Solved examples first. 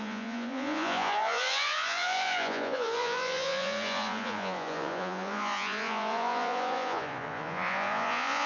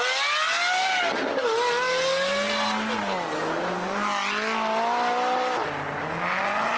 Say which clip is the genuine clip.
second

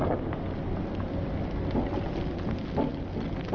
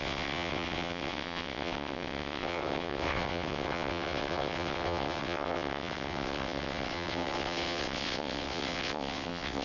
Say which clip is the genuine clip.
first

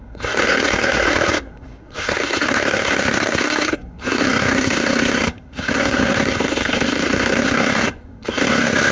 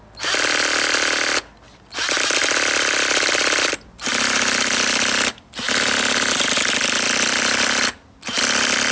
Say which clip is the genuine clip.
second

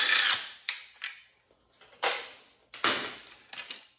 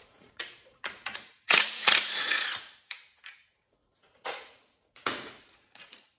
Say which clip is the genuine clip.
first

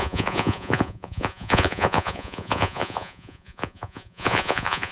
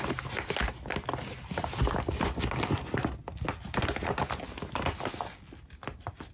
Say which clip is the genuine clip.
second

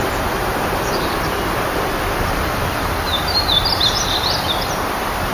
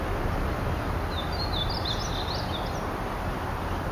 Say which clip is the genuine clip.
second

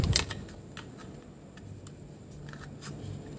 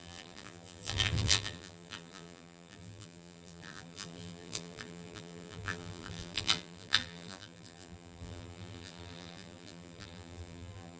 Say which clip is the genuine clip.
first